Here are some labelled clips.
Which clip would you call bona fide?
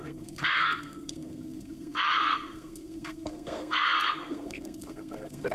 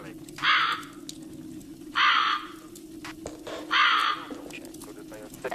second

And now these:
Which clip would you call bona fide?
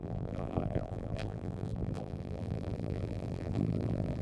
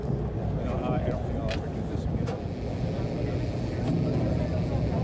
second